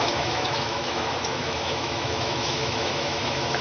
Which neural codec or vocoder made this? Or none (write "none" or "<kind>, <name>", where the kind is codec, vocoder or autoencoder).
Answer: autoencoder, DAC-VAE